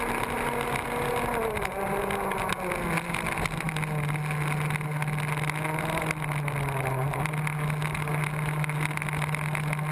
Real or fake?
real